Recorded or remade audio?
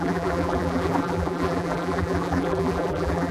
remade